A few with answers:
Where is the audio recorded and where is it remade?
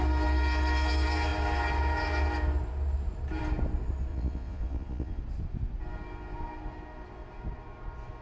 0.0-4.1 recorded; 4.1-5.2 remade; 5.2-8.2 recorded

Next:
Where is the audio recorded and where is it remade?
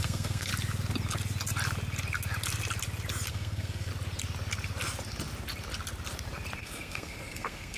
0.0-0.5 remade; 0.5-3.3 recorded; 3.3-3.9 remade; 3.9-6.6 recorded; 6.6-7.8 remade